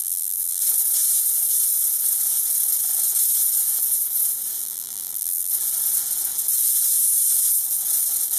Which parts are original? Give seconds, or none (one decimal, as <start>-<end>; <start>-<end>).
0.6-4.6; 5.5-8.4